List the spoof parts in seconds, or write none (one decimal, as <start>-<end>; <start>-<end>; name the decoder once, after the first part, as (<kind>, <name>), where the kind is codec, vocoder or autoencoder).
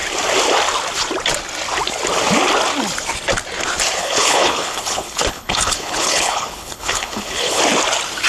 4.0-7.6 (codec, HILCodec)